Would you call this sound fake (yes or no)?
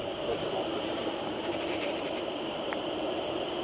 yes